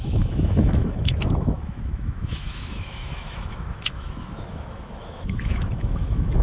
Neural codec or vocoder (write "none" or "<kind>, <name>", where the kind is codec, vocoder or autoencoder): autoencoder, DAC-VAE